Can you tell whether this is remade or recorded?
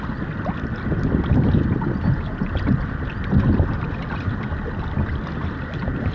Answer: recorded